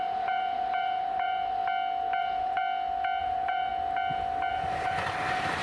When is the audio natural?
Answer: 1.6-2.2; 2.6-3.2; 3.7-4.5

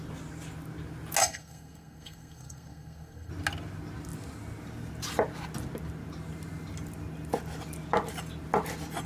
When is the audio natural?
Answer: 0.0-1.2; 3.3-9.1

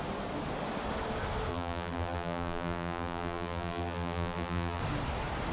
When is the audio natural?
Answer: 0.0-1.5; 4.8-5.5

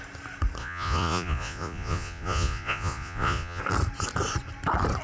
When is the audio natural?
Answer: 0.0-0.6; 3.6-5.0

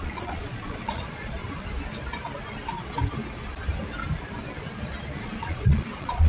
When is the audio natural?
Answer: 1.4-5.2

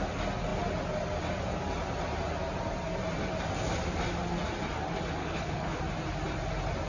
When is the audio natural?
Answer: 0.0-5.2; 5.8-6.9